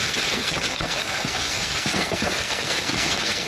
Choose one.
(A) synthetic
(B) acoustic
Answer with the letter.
A